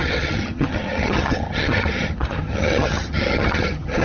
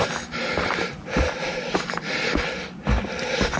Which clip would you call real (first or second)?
second